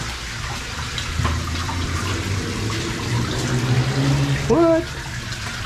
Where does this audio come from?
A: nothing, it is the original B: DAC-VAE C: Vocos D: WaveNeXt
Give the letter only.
A